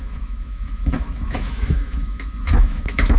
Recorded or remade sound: remade